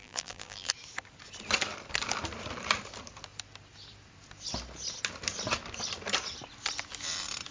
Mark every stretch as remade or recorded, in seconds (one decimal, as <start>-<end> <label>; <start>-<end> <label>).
0.0-0.7 remade; 0.7-7.5 recorded